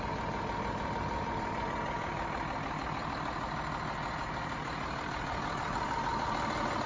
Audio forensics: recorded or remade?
recorded